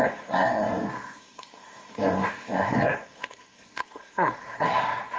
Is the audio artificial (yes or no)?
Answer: yes